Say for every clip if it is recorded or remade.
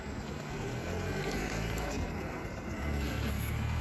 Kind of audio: remade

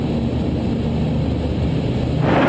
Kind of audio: recorded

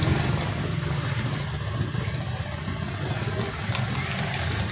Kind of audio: recorded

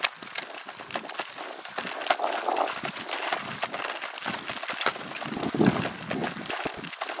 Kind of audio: recorded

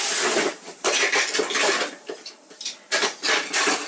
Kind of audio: recorded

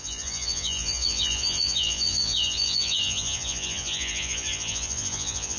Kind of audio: remade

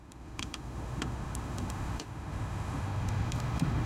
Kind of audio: remade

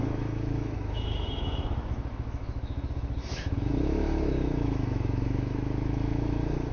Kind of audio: remade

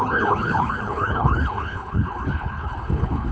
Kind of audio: remade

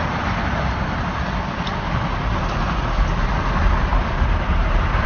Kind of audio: recorded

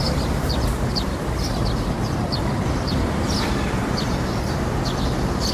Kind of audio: recorded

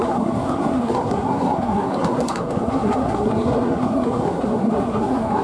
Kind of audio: remade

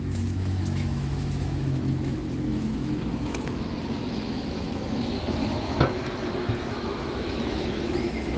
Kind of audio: remade